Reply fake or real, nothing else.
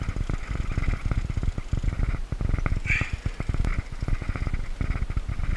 real